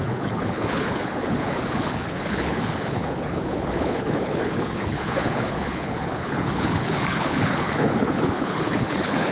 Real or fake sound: fake